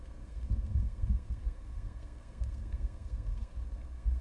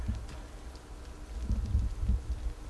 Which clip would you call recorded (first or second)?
second